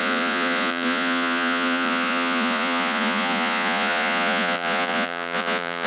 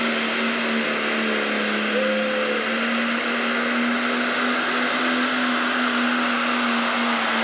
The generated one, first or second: first